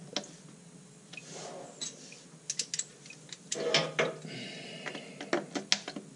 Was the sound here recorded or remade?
recorded